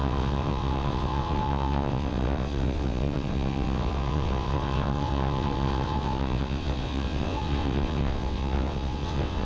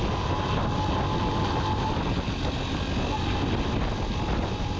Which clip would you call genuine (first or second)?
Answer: second